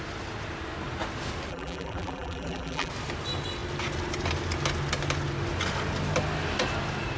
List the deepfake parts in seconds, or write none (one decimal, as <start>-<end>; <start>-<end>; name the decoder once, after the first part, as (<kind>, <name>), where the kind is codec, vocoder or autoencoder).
1.5-2.9 (vocoder, BigVGAN v2)